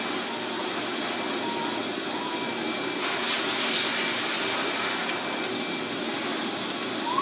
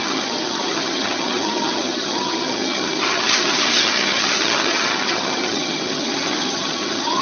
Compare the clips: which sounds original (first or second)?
first